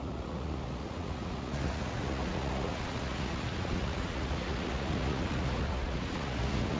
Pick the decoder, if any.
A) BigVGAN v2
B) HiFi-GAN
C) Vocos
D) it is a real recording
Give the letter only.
C